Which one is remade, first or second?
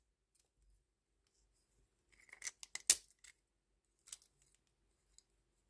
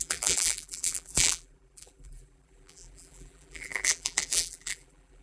second